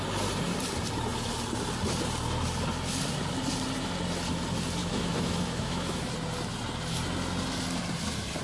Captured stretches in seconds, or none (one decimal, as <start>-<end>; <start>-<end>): 0.0-4.8; 6.1-8.4